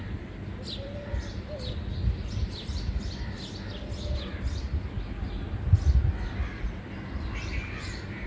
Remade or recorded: recorded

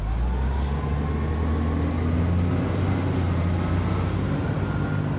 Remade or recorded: recorded